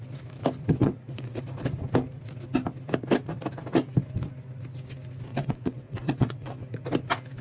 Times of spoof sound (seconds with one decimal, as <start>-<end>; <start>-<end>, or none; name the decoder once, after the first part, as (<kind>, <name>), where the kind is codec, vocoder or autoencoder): 0.8-1.4 (vocoder, WaveNeXt); 5.3-6.6